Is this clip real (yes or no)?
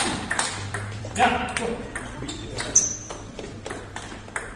no